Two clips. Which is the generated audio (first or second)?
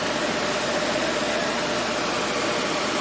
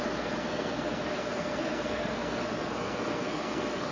second